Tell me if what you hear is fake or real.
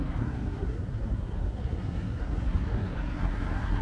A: fake